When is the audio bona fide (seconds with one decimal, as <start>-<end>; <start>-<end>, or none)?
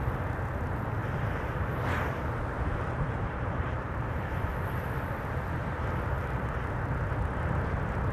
0.0-1.0; 4.5-8.1